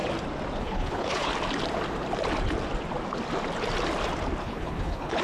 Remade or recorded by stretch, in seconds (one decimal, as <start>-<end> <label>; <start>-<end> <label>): 0.0-0.6 recorded; 0.6-1.3 remade; 1.3-4.4 recorded; 4.4-5.2 remade